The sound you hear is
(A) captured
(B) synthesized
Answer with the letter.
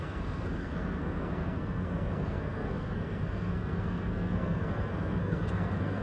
B